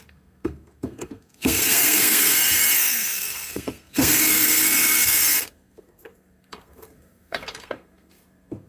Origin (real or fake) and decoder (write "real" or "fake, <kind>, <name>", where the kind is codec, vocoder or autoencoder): fake, codec, SNAC